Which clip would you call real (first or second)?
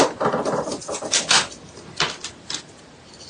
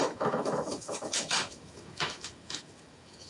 first